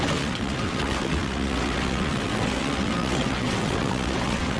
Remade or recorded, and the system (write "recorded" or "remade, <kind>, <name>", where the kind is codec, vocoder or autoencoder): remade, vocoder, WaveNeXt